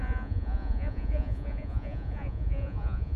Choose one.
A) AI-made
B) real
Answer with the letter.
A